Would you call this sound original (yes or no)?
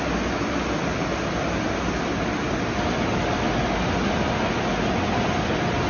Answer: yes